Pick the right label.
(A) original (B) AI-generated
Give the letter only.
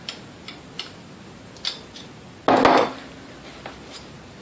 A